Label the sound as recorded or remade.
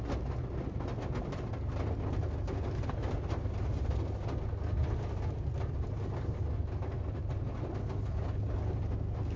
recorded